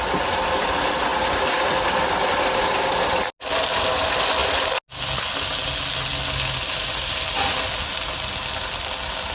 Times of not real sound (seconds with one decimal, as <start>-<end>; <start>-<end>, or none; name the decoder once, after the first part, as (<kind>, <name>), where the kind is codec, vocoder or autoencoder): none